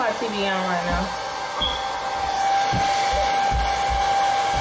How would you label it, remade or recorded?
recorded